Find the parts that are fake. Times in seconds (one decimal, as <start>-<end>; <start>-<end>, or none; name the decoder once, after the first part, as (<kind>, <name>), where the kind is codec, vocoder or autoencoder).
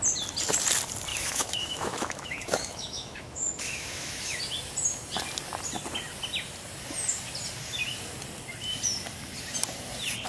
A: 1.1-4.4 (autoencoder, DAC-VAE)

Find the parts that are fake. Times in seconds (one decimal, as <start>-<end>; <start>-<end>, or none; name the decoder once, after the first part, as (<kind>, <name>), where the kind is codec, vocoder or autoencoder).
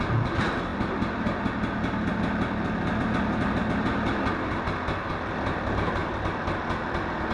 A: none